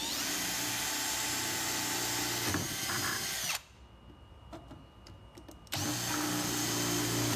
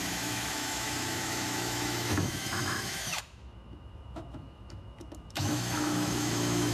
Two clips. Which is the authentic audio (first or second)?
first